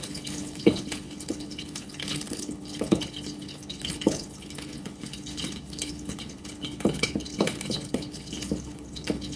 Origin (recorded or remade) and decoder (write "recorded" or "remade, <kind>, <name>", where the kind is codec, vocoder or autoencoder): remade, codec, HILCodec